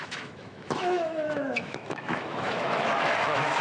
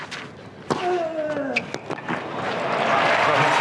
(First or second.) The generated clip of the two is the first